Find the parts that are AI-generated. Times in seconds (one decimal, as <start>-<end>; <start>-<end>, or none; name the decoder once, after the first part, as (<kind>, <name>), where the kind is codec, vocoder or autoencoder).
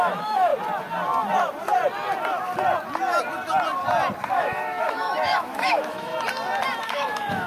0.0-0.5 (autoencoder, DAC-VAE); 4.3-6.1; 6.8-7.5